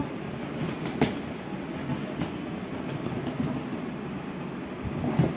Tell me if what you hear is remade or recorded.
recorded